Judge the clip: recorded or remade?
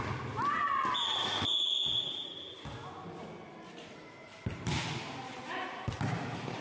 recorded